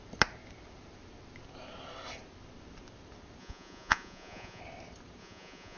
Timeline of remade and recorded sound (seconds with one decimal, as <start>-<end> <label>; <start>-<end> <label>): 0.0-3.4 recorded; 3.4-4.6 remade; 4.6-5.2 recorded; 5.2-5.8 remade